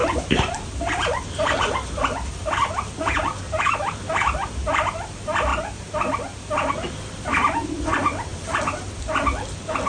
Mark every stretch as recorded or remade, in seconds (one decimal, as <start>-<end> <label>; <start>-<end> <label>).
0.0-9.9 recorded

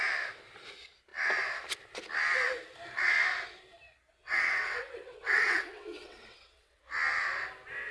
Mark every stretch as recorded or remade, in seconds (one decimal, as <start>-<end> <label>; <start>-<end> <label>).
0.0-4.2 recorded; 4.2-6.8 remade; 6.8-7.9 recorded

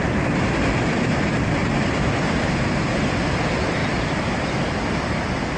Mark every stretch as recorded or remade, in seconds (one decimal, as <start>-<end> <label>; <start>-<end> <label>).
0.0-5.6 recorded

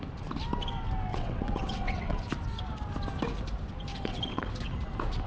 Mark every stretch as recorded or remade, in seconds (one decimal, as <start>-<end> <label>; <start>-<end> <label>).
0.0-1.1 recorded; 1.1-2.2 remade; 2.2-3.9 recorded; 3.9-4.5 remade; 4.5-5.3 recorded

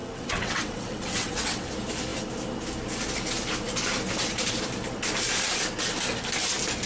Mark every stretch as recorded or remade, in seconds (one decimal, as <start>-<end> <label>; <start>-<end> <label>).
0.0-1.7 remade; 1.7-6.9 recorded

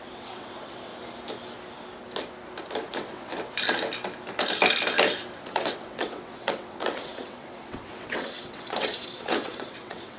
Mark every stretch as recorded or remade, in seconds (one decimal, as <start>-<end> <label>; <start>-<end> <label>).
0.0-0.9 remade; 0.9-2.9 recorded; 2.9-3.3 remade; 3.3-5.5 recorded; 5.5-10.2 remade

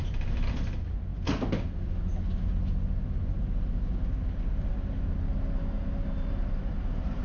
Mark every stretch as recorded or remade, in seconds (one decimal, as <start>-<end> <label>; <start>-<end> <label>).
0.0-7.2 recorded

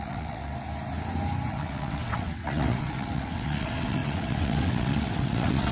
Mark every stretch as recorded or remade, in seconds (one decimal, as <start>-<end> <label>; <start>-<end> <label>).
0.0-0.5 remade; 0.5-1.5 recorded; 1.5-5.7 remade